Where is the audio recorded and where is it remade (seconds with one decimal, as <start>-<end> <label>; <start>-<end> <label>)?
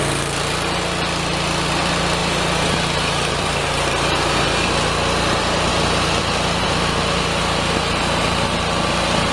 0.0-2.2 recorded; 2.2-4.7 remade; 4.7-5.7 recorded; 5.7-6.2 remade; 6.2-9.3 recorded